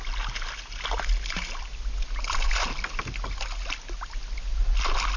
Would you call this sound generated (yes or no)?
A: no